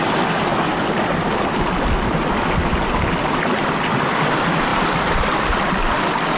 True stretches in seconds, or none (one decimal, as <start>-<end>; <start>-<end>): 0.0-6.4